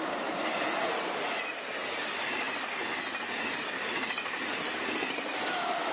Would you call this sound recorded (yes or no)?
yes